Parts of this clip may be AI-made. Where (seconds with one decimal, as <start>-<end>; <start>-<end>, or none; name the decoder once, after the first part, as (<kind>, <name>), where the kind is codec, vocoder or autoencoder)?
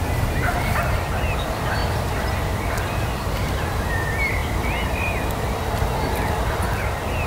1.8-3.8 (vocoder, BigVGAN v2)